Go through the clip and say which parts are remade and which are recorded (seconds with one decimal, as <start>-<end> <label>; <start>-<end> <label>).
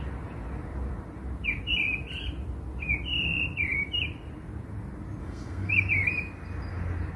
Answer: 0.0-5.2 recorded; 5.2-5.7 remade; 5.7-7.2 recorded